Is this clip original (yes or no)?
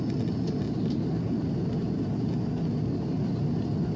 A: yes